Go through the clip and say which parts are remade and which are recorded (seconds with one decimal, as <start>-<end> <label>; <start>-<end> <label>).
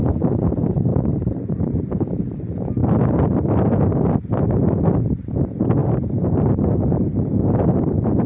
0.0-2.8 remade; 2.8-5.0 recorded; 5.0-8.3 remade